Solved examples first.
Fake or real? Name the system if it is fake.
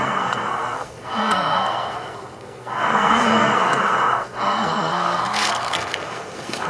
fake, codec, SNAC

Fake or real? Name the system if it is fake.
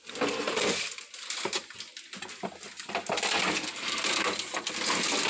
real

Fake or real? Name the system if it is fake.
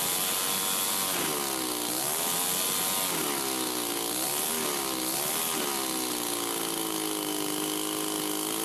real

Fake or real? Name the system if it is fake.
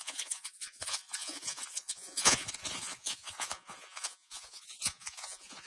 fake, vocoder, Vocos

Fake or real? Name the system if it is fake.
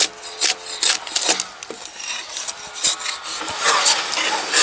real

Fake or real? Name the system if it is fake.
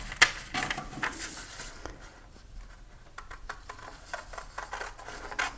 real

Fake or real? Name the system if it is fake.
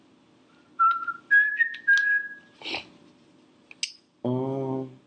real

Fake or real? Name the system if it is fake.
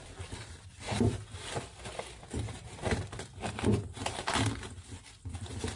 real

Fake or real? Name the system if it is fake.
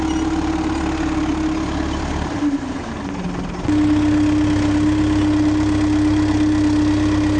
real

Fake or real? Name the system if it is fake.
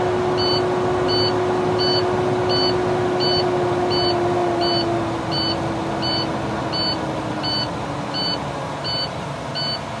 real